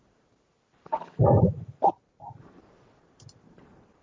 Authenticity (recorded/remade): remade